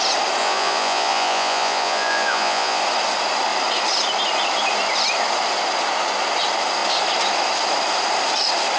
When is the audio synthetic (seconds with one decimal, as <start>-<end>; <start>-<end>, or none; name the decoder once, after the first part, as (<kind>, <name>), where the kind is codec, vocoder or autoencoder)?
0.4-2.8 (vocoder, Vocos)